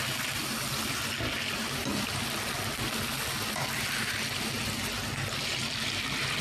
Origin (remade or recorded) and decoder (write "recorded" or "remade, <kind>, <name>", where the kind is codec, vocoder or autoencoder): recorded